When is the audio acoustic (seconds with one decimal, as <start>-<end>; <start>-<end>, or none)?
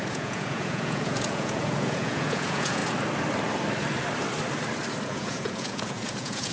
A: 2.8-5.1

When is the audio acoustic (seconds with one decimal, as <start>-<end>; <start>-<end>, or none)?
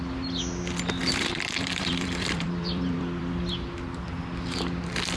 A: 0.0-1.0; 3.5-5.2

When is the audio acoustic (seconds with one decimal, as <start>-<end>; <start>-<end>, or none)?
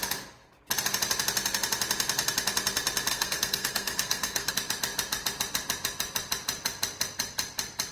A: 0.0-3.1; 4.5-7.9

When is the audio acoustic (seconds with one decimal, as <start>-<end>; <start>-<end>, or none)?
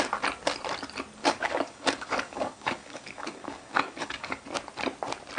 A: 0.0-1.2; 4.4-5.4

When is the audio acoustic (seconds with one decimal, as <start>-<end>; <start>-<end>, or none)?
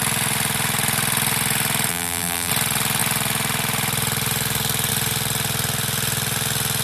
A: 0.0-1.9; 2.5-6.8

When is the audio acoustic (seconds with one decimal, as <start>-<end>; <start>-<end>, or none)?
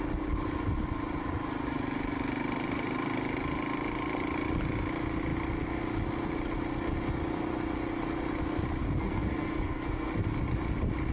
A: 0.0-8.8; 10.1-11.1